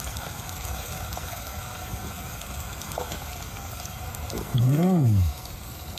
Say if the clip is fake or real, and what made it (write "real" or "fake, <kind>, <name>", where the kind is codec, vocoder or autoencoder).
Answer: fake, codec, SNAC